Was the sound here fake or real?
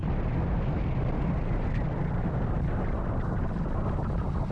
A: real